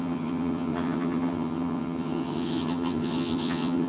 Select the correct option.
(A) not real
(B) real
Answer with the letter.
A